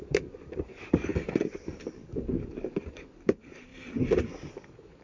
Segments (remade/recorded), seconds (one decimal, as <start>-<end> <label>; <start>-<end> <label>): 0.0-3.7 remade; 3.7-4.5 recorded; 4.5-5.0 remade